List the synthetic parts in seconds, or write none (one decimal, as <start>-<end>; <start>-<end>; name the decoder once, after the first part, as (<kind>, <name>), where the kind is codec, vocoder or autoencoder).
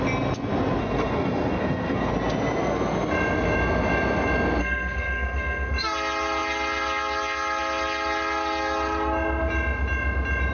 0.8-2.1 (codec, SNAC); 4.6-5.7